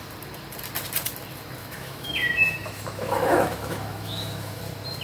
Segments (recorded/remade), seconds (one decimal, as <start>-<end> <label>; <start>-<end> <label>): 0.0-1.6 recorded; 1.6-4.6 remade; 4.6-5.0 recorded